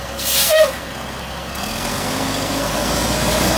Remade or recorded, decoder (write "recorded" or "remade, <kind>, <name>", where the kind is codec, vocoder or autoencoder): remade, codec, SNAC